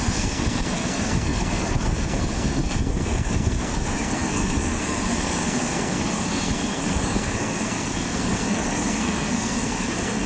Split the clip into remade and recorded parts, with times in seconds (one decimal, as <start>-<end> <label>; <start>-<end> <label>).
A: 0.0-10.3 remade